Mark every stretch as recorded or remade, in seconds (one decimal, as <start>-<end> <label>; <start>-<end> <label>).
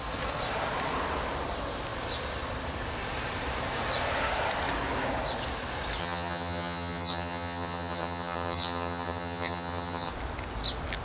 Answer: 0.0-6.0 recorded; 6.0-10.1 remade; 10.1-11.0 recorded